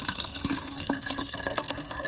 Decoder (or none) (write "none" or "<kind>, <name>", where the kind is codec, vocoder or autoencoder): codec, SNAC